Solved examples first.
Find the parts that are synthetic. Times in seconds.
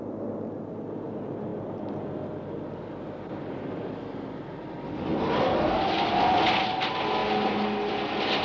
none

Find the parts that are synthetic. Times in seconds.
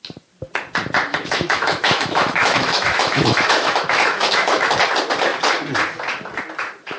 1.1-4.7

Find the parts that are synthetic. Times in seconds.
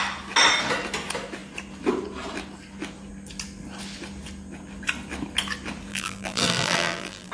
5.9-7.3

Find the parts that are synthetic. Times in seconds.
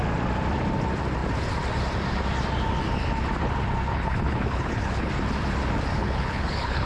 3.9-5.1; 5.9-6.9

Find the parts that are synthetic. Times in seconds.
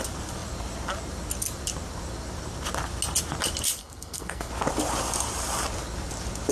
3.8-4.5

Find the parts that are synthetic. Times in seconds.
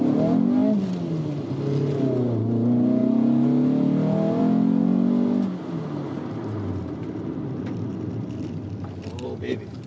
none